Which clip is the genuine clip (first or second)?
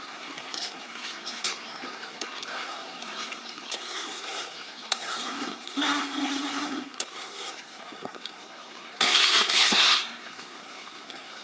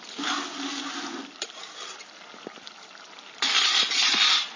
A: second